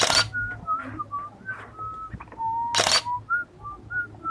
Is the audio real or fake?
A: real